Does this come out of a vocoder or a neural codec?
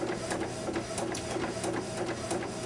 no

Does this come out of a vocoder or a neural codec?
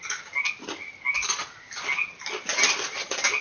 no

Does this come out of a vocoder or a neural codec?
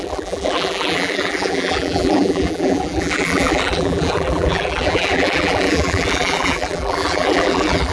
yes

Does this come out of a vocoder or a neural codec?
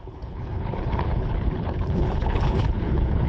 yes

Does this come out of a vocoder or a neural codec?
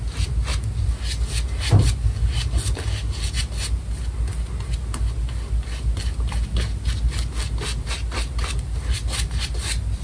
no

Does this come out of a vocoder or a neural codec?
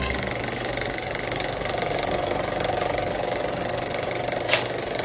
yes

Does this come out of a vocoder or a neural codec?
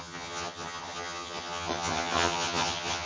yes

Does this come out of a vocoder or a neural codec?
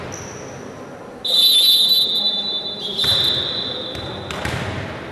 no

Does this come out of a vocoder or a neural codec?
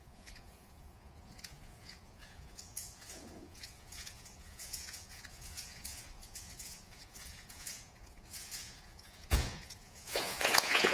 yes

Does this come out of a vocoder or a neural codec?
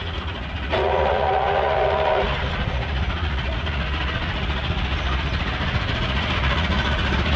yes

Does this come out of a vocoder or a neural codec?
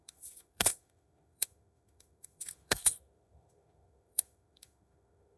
yes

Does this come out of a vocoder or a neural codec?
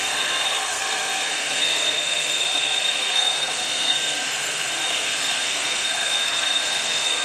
yes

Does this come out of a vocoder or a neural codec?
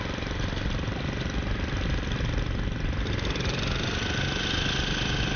no